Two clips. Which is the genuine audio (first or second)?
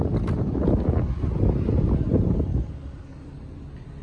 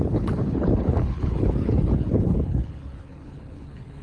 first